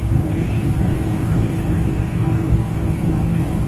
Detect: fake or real fake